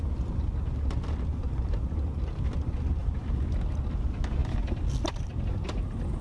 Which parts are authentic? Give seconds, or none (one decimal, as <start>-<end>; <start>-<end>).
0.0-1.3; 2.2-4.4